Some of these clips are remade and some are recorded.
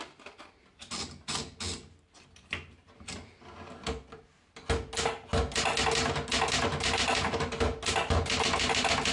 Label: recorded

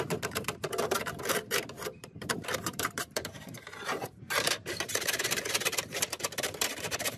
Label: remade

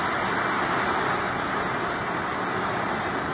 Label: recorded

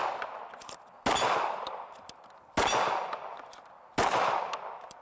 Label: recorded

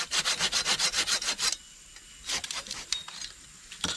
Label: recorded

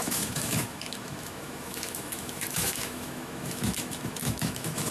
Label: remade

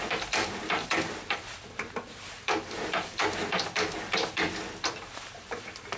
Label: remade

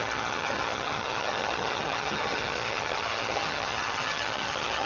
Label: remade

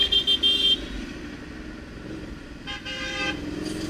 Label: recorded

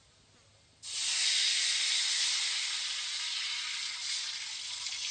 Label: recorded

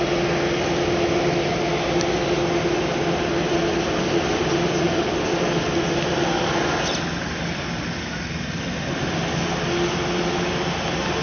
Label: recorded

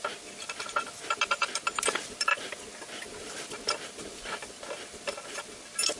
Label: recorded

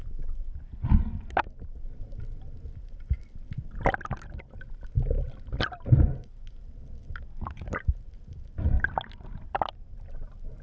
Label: recorded